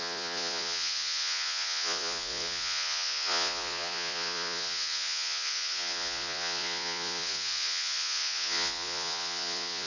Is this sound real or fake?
fake